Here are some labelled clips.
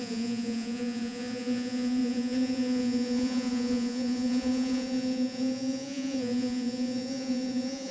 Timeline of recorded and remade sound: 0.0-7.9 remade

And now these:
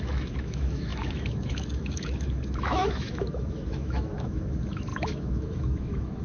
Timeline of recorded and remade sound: 0.0-6.2 remade

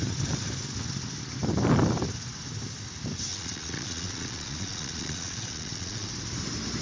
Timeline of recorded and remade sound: 0.0-3.3 recorded; 3.3-6.1 remade; 6.1-6.8 recorded

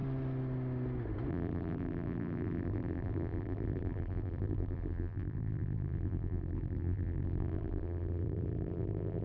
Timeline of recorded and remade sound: 0.0-1.3 recorded; 1.3-9.2 remade

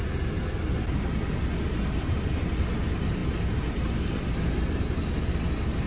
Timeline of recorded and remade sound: 0.0-5.9 recorded

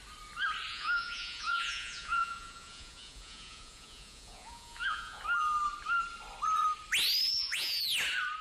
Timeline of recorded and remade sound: 0.0-0.7 recorded; 0.7-5.2 remade; 5.2-7.3 recorded; 7.3-7.9 remade; 7.9-8.4 recorded

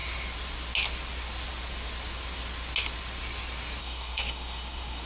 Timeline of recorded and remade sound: 0.0-3.8 recorded; 3.8-5.1 remade

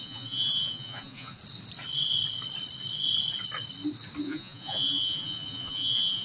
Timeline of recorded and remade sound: 0.0-1.4 remade; 1.4-4.2 recorded; 4.2-6.2 remade